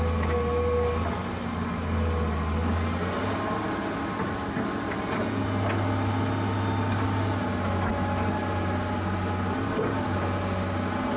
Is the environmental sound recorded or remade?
recorded